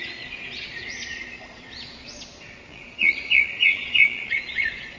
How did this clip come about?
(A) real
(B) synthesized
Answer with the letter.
B